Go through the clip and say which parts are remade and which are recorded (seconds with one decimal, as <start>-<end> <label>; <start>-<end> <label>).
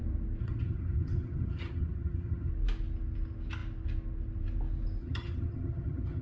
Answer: 0.0-0.4 recorded; 0.4-2.5 remade; 2.5-5.0 recorded; 5.0-6.2 remade